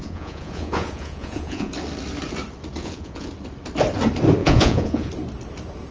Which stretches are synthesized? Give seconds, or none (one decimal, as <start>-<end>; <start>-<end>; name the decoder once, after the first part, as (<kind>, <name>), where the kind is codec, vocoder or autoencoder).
0.0-1.7 (vocoder, Vocos); 2.8-3.3; 4.4-5.1